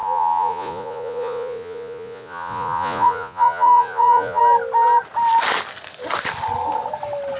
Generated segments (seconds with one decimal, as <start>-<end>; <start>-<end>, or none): 0.0-4.4